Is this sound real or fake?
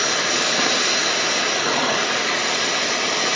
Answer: real